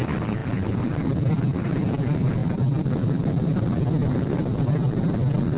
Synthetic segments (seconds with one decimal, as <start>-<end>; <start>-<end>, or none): none